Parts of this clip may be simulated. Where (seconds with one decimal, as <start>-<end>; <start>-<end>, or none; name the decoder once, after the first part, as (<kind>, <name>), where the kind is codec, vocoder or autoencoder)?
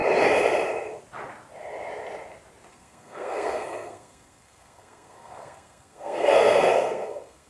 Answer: 2.7-7.5 (codec, SNAC)